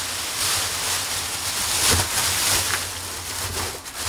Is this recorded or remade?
recorded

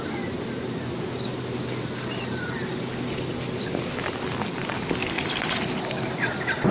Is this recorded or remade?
recorded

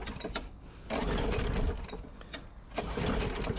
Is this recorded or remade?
recorded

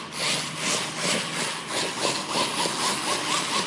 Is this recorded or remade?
recorded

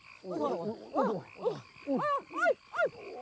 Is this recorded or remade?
recorded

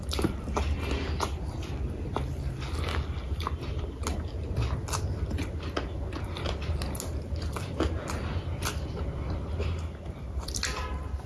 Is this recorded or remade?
recorded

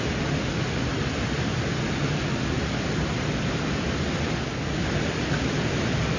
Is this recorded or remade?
recorded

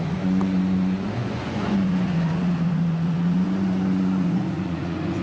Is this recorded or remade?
remade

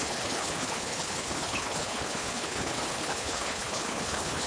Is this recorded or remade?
remade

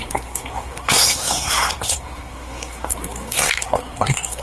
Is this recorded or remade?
remade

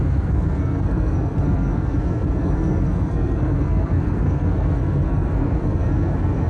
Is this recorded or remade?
remade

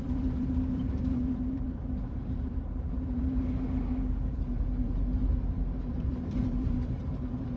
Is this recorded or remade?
remade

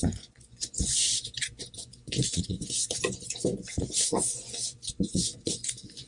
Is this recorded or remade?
remade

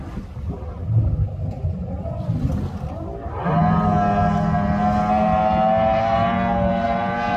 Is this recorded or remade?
recorded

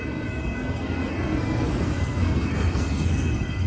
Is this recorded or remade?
remade